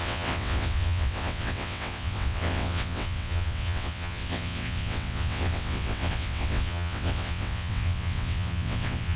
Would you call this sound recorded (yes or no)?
no